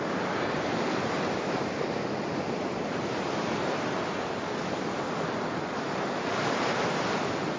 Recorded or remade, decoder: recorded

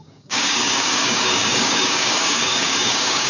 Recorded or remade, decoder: remade, codec, DAC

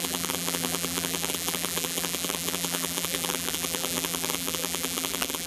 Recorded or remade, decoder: remade, vocoder, BigVGAN v2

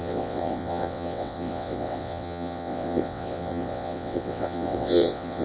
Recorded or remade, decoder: remade, vocoder, WaveNeXt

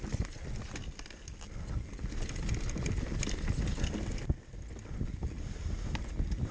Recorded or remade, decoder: recorded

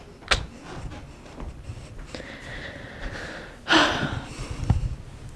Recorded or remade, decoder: recorded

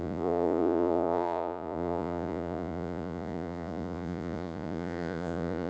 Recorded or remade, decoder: remade, vocoder, Vocos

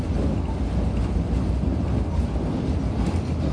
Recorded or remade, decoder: recorded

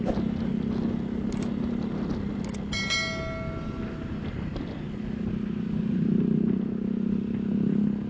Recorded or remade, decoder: recorded